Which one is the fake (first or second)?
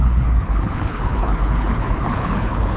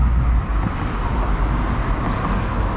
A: first